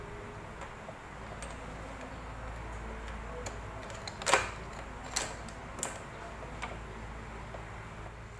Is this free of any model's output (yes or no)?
yes